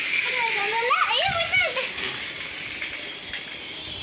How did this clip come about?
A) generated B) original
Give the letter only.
A